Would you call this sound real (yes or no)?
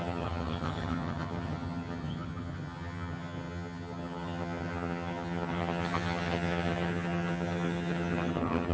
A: no